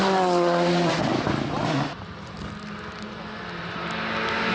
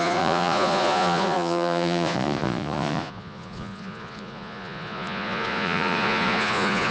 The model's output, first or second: second